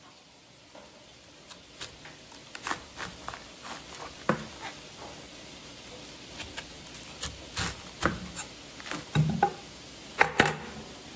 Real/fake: real